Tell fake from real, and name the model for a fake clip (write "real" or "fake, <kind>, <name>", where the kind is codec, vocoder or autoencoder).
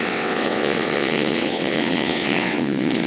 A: fake, vocoder, WaveNeXt